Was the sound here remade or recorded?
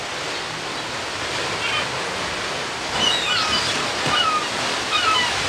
recorded